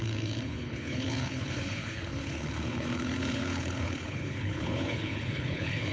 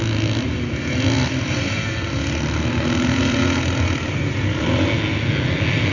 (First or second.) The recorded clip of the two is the second